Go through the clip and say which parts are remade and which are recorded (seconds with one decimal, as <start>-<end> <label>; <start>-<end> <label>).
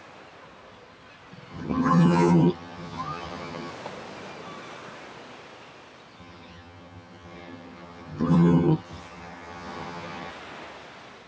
0.0-1.5 recorded; 1.5-3.7 remade; 3.7-6.2 recorded; 6.2-10.3 remade; 10.3-11.3 recorded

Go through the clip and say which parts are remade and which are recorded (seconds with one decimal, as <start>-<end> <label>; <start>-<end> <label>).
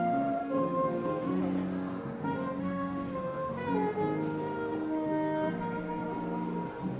0.0-0.4 recorded; 0.4-1.4 remade; 1.4-2.6 recorded; 2.6-3.5 remade; 3.5-7.0 recorded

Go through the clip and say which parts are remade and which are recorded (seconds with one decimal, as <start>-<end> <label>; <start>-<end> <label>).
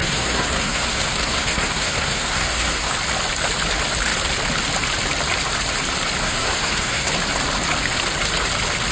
0.0-2.9 remade; 2.9-6.2 recorded; 6.2-7.1 remade; 7.1-8.9 recorded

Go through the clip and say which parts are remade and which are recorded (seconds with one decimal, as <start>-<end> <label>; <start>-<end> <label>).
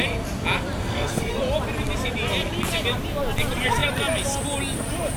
0.0-0.8 recorded; 0.8-1.4 remade; 1.4-5.2 recorded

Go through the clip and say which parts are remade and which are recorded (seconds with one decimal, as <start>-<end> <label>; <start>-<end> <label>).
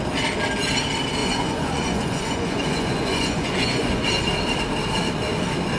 0.0-1.2 recorded; 1.2-4.1 remade; 4.1-5.8 recorded